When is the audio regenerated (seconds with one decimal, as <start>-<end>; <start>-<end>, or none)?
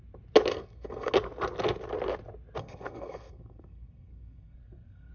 0.5-1.1; 2.6-5.1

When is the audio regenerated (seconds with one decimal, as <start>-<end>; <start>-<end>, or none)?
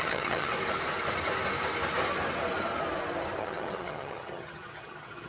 0.0-0.5; 3.4-5.3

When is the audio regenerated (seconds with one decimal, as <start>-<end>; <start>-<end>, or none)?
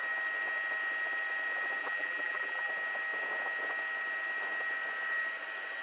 1.8-2.7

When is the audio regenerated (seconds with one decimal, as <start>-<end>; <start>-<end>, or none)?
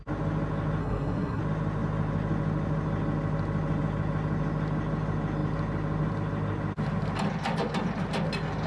0.8-1.4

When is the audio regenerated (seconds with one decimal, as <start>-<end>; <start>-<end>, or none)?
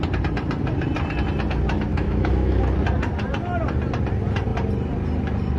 1.9-2.6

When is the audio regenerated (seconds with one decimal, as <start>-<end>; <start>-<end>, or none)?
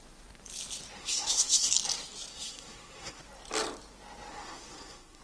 1.0-1.7; 2.3-3.2; 4.3-5.2